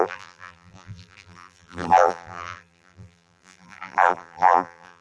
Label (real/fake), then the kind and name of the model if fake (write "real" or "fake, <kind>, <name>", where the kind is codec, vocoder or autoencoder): fake, vocoder, BigVGAN v2